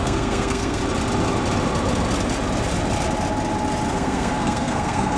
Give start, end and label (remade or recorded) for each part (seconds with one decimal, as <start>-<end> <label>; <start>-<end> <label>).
0.0-0.8 remade; 0.8-3.9 recorded; 3.9-5.2 remade